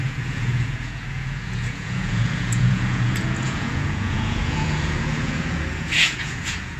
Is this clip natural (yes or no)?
no